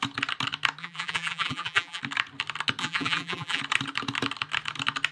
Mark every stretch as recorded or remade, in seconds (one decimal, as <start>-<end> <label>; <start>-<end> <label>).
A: 0.0-0.8 recorded; 0.8-2.0 remade; 2.0-2.8 recorded; 2.8-3.6 remade; 3.6-5.1 recorded